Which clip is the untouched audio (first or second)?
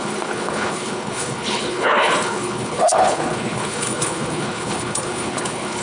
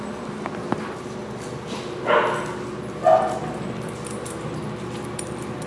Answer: second